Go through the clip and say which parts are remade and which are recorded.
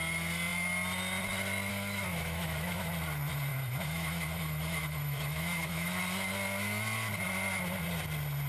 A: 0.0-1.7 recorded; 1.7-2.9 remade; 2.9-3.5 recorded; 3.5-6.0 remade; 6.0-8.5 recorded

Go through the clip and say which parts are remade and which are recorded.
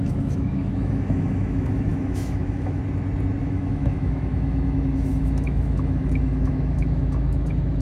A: 0.0-2.8 remade; 2.8-3.4 recorded; 3.4-7.8 remade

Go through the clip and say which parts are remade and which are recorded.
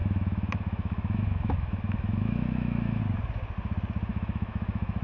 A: 0.0-3.0 remade; 3.0-4.1 recorded; 4.1-5.0 remade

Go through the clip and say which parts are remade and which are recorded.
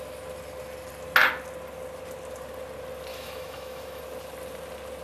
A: 0.0-3.1 recorded; 3.1-4.0 remade; 4.0-5.0 recorded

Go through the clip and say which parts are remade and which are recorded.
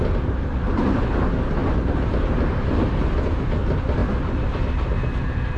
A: 0.0-5.6 recorded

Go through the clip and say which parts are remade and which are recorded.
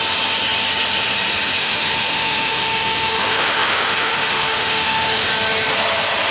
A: 0.0-1.6 recorded; 1.6-5.3 remade; 5.3-6.3 recorded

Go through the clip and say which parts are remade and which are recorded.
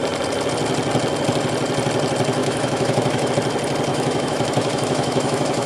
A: 0.0-2.4 recorded; 2.4-3.3 remade; 3.3-3.9 recorded; 3.9-5.7 remade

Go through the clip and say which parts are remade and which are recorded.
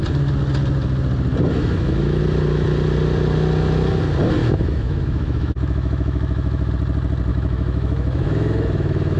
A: 0.0-1.6 recorded; 1.6-2.2 remade; 2.2-4.4 recorded; 4.4-6.7 remade; 6.7-7.3 recorded; 7.3-9.2 remade